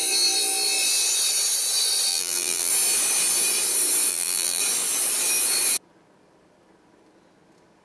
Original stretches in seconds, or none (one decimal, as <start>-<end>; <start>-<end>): 0.0-2.1; 2.7-4.1; 4.6-7.8